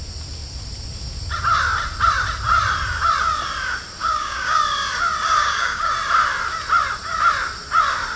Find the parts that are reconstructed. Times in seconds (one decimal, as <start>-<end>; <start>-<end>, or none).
4.0-4.6; 5.4-5.9